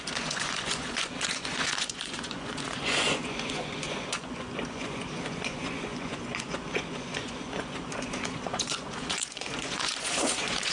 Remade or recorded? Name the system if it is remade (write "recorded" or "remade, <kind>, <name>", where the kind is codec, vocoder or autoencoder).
remade, vocoder, Vocos